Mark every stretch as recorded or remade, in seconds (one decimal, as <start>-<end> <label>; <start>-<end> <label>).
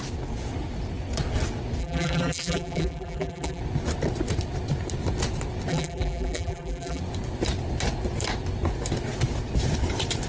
0.0-1.8 recorded; 1.8-3.6 remade; 3.6-5.7 recorded; 5.7-7.0 remade; 7.0-10.3 recorded